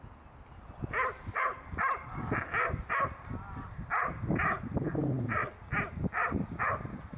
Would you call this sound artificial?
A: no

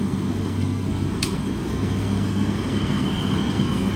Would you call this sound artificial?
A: yes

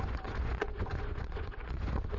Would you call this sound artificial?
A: yes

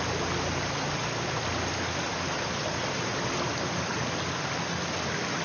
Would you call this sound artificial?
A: no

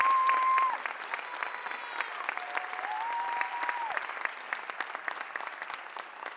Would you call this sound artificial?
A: no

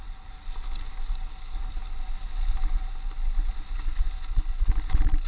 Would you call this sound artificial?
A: no